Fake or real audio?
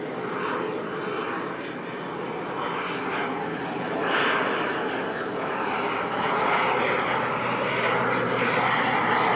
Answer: real